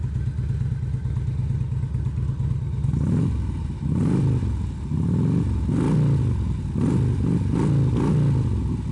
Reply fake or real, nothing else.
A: real